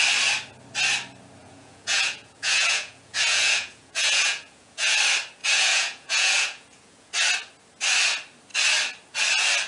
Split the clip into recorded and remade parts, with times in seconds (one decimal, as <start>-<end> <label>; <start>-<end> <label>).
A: 0.0-1.4 recorded; 1.4-5.0 remade; 5.0-5.4 recorded; 5.4-7.1 remade; 7.1-9.7 recorded